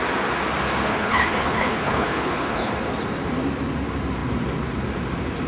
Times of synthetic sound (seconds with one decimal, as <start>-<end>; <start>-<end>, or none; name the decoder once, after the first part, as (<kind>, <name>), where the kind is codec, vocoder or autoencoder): 0.9-2.7 (codec, HILCodec)